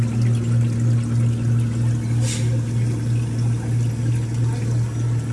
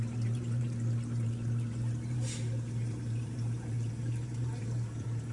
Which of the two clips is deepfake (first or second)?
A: second